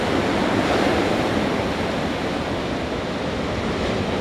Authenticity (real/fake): real